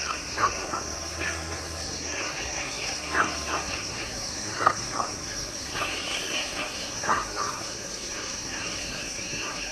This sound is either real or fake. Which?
fake